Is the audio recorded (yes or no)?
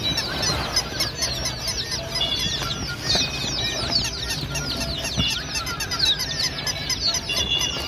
yes